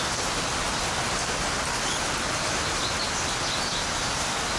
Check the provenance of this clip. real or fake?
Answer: real